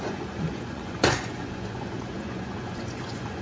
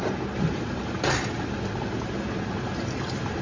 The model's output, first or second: first